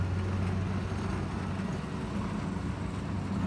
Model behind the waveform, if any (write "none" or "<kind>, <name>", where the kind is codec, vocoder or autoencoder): none